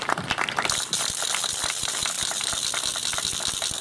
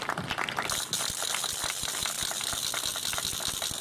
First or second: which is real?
second